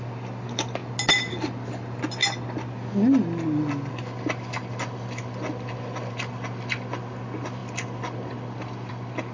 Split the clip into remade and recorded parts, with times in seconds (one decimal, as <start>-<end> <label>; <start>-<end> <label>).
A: 0.0-9.3 recorded